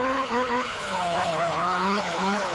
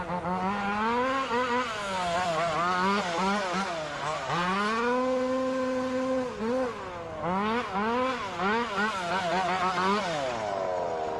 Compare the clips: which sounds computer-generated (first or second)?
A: first